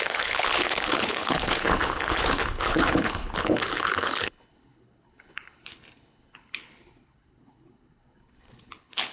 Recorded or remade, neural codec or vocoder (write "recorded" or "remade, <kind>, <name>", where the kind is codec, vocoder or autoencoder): remade, codec, HILCodec